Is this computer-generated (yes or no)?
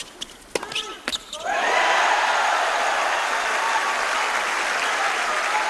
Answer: no